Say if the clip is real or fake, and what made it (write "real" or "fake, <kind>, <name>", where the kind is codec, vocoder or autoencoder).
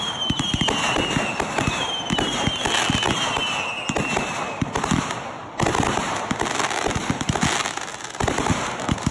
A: real